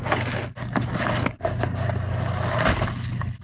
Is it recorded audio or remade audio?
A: recorded